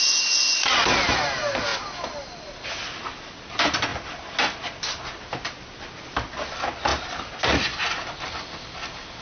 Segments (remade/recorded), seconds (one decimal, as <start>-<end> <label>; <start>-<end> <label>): 0.0-9.2 recorded